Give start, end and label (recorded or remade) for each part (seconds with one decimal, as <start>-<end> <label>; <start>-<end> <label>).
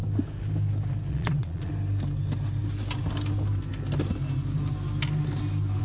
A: 0.0-1.1 recorded; 1.1-1.7 remade; 1.7-5.8 recorded